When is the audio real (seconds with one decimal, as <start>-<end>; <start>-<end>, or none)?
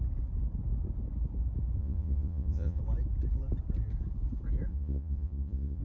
0.0-1.8; 2.8-4.7